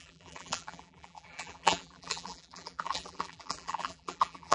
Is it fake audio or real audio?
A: fake